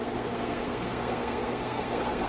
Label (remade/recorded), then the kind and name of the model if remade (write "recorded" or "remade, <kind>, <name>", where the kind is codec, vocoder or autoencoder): remade, codec, SNAC